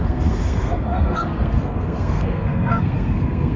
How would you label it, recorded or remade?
remade